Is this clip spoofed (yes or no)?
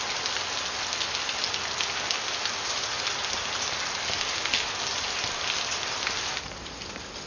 no